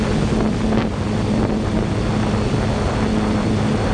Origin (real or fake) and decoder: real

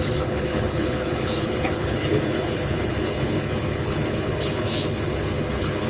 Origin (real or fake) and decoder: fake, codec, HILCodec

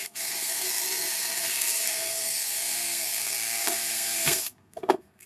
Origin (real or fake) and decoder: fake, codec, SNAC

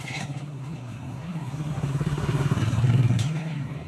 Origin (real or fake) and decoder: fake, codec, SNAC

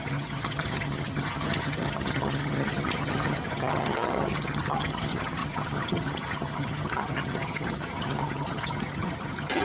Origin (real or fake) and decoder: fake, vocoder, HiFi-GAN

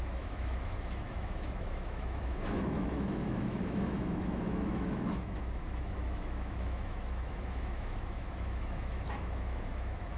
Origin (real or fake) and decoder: fake, autoencoder, DAC-VAE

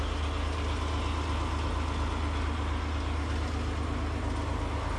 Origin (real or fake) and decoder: real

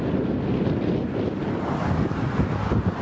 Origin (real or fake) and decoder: real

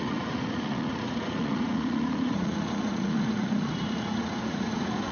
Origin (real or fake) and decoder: fake, vocoder, Vocos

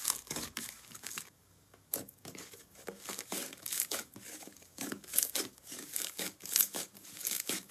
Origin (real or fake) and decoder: fake, codec, DAC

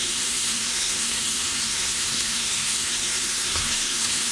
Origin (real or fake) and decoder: fake, codec, SNAC